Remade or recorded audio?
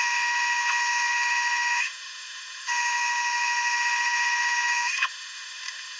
remade